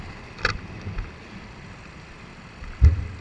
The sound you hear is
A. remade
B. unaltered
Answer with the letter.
B